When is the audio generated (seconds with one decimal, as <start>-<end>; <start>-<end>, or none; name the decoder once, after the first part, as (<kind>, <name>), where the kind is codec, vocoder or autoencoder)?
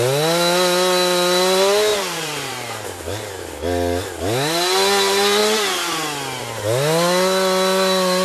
1.9-3.5 (vocoder, BigVGAN v2)